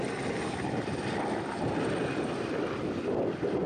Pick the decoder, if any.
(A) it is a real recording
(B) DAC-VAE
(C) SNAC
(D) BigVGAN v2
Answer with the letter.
A